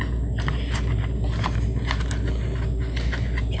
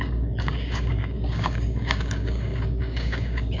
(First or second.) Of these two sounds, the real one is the first